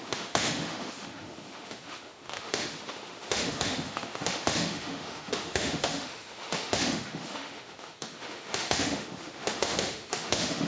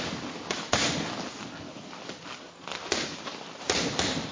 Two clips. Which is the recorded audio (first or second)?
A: second